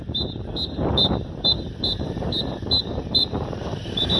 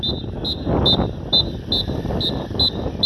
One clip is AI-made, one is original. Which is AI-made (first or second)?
first